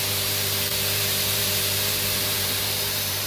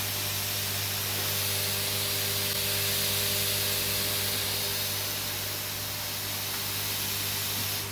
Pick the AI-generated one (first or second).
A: first